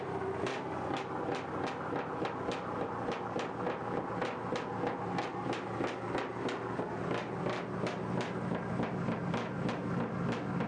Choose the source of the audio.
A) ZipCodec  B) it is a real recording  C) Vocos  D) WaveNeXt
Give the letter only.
B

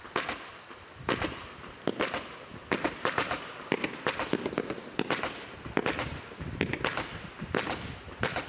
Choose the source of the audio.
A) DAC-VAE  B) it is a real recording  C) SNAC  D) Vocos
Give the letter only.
B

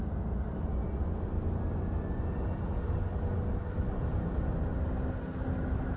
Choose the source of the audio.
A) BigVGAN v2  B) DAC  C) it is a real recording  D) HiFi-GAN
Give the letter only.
C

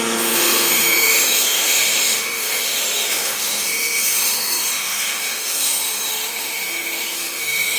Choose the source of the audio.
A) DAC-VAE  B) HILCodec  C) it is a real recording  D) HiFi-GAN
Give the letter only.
A